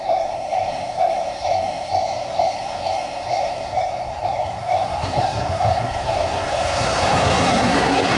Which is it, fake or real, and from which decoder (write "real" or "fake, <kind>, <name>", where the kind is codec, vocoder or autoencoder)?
fake, codec, SNAC